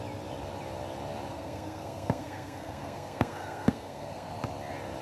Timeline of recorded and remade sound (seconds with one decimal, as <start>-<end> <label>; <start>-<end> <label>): 0.0-1.3 recorded; 1.3-4.3 remade; 4.3-5.0 recorded

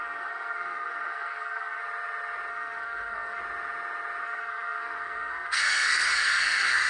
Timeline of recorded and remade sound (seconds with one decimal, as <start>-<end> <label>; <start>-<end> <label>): 0.0-1.8 remade; 1.8-2.5 recorded; 2.5-3.4 remade; 3.4-4.2 recorded; 4.2-6.9 remade

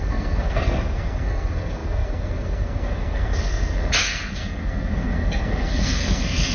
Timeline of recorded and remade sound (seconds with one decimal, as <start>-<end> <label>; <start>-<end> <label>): 0.0-6.5 remade

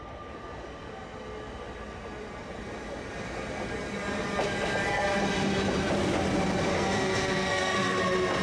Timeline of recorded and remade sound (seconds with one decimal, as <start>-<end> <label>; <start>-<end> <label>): 0.0-6.7 recorded; 6.7-8.0 remade; 8.0-8.4 recorded